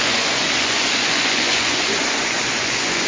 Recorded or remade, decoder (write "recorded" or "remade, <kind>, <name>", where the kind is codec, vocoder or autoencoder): remade, vocoder, Vocos